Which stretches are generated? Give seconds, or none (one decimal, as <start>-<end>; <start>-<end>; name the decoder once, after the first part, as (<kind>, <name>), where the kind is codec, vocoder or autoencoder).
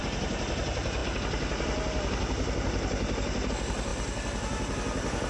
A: none